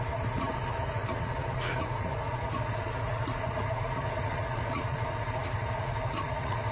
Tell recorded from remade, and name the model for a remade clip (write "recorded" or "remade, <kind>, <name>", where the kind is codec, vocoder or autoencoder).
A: remade, vocoder, Vocos